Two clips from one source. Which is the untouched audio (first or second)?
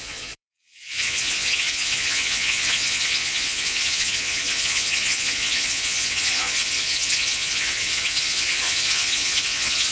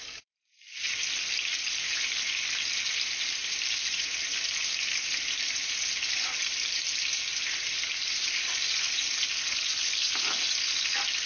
second